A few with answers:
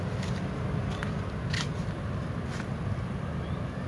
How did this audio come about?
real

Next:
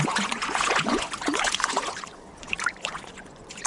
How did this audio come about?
fake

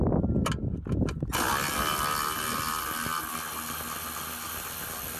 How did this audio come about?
real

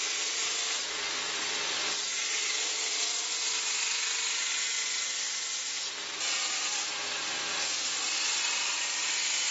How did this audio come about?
real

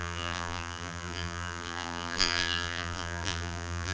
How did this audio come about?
fake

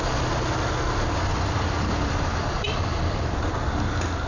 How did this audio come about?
real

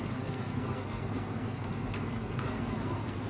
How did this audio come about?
fake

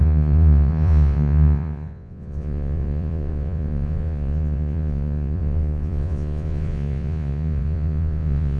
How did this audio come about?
fake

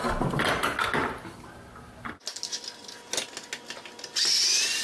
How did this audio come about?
real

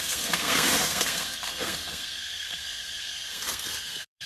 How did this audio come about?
fake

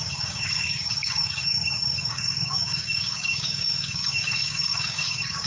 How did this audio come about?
fake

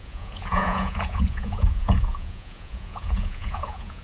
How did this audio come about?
fake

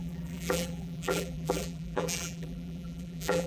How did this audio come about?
fake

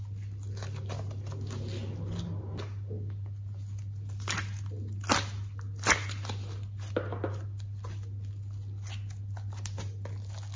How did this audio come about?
real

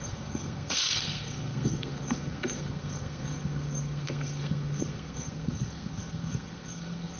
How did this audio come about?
fake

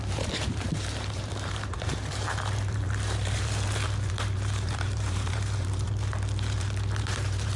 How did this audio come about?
fake